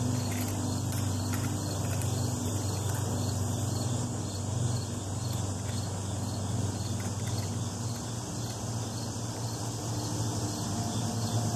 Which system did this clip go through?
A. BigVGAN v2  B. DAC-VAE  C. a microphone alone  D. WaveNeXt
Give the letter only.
A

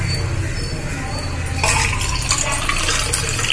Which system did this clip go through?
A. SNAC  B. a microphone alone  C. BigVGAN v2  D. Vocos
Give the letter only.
B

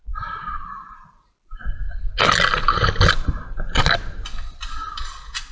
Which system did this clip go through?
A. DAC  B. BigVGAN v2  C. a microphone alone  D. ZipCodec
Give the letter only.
C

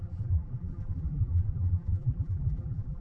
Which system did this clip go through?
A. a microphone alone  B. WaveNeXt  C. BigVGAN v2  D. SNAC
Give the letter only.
C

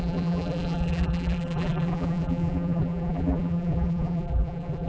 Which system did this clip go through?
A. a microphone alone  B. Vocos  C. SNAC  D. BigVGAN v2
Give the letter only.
D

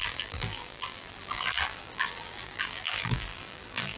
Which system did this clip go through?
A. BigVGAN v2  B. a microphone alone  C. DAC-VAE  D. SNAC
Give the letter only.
A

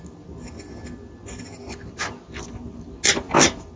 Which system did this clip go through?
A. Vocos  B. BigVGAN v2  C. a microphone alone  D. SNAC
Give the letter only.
C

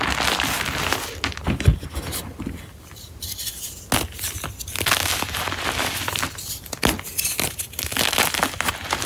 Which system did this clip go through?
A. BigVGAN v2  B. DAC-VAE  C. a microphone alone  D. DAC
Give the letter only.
C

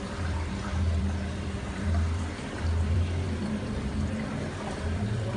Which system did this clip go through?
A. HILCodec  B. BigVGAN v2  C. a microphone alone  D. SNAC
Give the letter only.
B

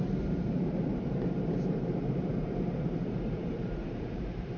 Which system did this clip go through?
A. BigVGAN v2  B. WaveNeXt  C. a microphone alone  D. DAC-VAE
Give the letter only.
A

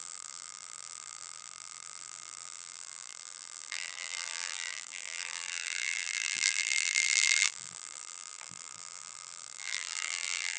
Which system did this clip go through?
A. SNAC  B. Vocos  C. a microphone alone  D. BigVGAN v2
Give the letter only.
D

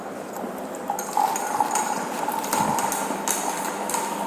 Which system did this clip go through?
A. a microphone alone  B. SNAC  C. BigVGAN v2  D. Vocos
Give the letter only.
A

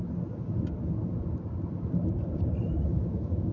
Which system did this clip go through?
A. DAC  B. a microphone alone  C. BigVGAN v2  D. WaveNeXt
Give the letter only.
B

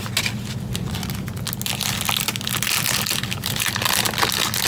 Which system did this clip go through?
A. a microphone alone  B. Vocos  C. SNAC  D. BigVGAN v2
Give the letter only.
A